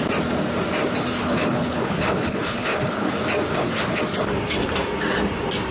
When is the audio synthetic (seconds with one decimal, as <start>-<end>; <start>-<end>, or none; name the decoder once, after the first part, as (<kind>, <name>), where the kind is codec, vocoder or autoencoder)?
1.2-3.1 (codec, HILCodec); 3.5-4.0